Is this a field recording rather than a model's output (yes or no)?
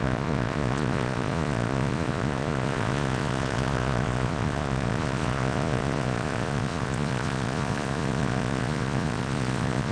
no